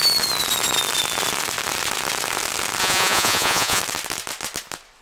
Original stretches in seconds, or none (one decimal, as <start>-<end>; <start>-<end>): 0.0-2.8; 3.8-5.0